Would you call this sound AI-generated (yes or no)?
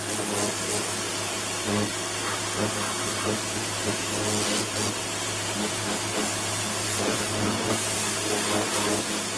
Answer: no